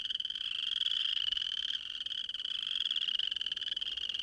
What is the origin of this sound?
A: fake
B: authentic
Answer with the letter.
B